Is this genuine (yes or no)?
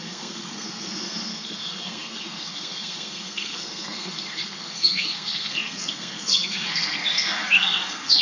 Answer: no